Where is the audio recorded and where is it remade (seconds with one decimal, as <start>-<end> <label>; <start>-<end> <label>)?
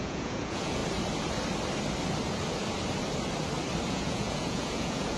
0.0-0.8 remade; 0.8-3.9 recorded; 3.9-5.2 remade